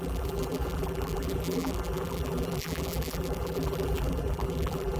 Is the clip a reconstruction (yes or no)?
yes